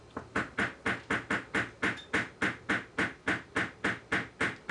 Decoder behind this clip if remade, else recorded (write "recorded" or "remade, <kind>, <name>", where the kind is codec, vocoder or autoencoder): recorded